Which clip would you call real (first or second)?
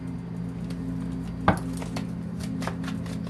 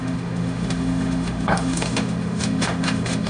first